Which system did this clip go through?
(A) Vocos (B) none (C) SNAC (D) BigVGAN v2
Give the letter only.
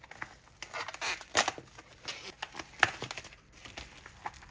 B